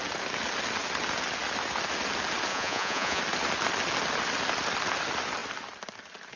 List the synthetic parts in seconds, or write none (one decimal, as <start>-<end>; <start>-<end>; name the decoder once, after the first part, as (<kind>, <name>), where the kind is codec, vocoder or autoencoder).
2.5-3.2 (vocoder, Vocos)